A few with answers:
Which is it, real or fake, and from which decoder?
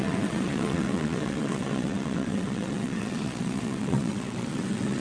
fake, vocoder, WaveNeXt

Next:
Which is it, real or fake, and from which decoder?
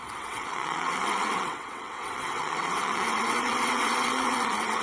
fake, vocoder, WaveNeXt